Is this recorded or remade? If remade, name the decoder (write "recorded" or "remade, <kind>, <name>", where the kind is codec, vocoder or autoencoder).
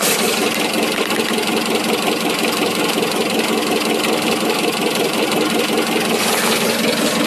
recorded